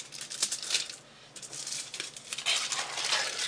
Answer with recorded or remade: recorded